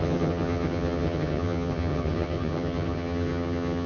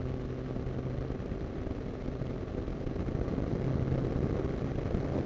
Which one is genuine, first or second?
second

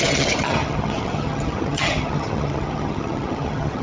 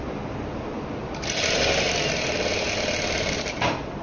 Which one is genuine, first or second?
second